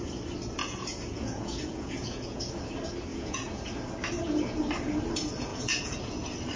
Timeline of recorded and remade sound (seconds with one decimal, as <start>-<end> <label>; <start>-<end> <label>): 0.0-0.6 recorded; 0.6-2.5 remade; 2.5-3.1 recorded; 3.1-3.7 remade; 3.7-5.5 recorded; 5.5-6.0 remade; 6.0-6.6 recorded